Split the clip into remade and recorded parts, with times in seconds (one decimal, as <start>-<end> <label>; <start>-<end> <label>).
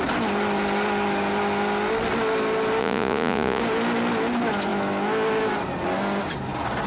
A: 0.0-2.8 recorded; 2.8-3.6 remade; 3.6-6.9 recorded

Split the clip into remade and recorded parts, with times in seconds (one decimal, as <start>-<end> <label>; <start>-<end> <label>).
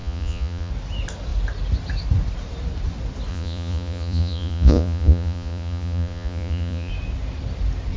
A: 0.0-0.7 remade; 0.7-3.3 recorded; 3.3-6.9 remade; 6.9-8.0 recorded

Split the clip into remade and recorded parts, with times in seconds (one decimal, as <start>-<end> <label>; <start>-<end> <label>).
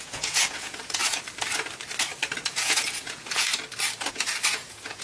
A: 0.0-1.0 remade; 1.0-2.5 recorded; 2.5-3.5 remade; 3.5-4.1 recorded; 4.1-5.0 remade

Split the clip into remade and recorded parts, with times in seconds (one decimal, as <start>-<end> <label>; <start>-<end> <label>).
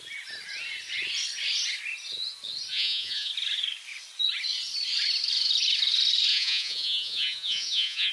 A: 0.0-2.7 recorded; 2.7-3.3 remade; 3.3-6.3 recorded; 6.3-8.1 remade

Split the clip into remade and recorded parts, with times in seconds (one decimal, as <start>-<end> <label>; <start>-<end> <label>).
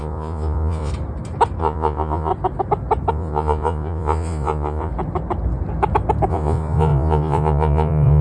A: 0.0-0.9 remade; 0.9-1.6 recorded; 1.6-2.3 remade; 2.3-3.1 recorded; 3.1-4.9 remade; 4.9-6.3 recorded; 6.3-8.2 remade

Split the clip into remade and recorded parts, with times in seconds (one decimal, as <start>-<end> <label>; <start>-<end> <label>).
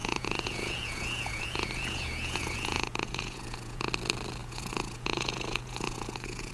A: 0.0-3.9 remade; 3.9-4.4 recorded; 4.4-6.5 remade